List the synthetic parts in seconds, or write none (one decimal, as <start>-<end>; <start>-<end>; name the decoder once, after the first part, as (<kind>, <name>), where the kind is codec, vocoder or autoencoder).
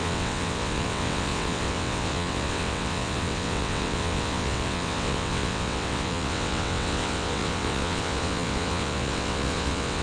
0.0-10.0 (vocoder, WaveNeXt)